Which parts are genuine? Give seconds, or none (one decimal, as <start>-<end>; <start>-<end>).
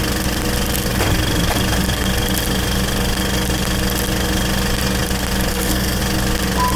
0.0-5.5; 6.0-6.8